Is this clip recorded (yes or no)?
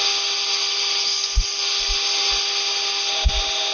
yes